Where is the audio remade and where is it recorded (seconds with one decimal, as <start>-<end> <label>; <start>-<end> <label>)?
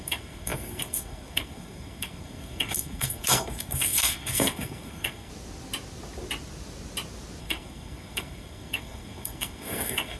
0.0-5.3 remade; 5.3-7.4 recorded; 7.4-10.2 remade